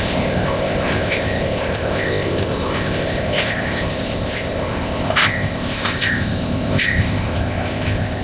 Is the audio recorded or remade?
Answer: remade